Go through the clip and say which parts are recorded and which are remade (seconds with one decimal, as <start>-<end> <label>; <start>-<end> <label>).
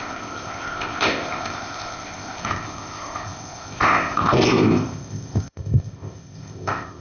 0.0-7.0 remade